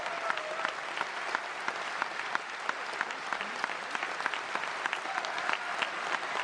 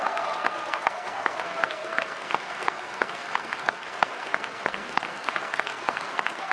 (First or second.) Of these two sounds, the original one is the first